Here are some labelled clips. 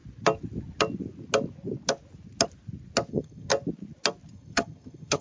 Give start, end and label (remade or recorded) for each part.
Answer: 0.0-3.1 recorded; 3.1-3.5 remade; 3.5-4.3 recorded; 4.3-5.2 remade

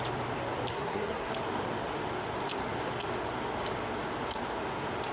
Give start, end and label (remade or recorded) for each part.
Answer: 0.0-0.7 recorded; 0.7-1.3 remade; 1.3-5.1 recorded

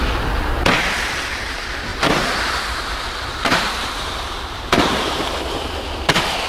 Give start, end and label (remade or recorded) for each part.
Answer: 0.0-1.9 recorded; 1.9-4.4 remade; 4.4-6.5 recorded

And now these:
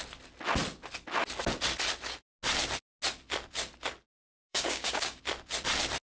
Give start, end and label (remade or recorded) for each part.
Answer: 0.0-4.5 recorded; 4.5-5.2 remade; 5.2-6.0 recorded

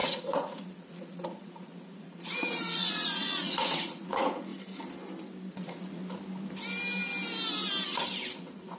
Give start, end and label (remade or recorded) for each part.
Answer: 0.0-4.5 remade; 4.5-5.5 recorded; 5.5-6.0 remade; 6.0-8.4 recorded; 8.4-8.8 remade

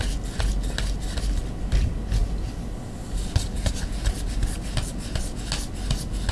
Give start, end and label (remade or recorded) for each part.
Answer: 0.0-6.3 recorded

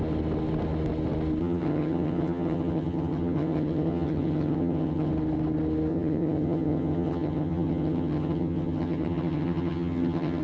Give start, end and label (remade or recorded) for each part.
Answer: 0.0-1.4 recorded; 1.4-5.1 remade; 5.1-5.9 recorded; 5.9-10.4 remade